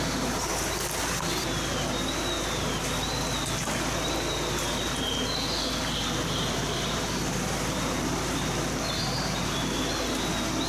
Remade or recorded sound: recorded